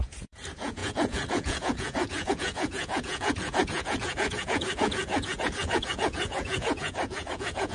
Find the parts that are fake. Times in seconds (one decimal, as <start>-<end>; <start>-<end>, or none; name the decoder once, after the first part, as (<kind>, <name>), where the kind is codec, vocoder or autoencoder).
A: 0.0-7.7 (vocoder, Vocos)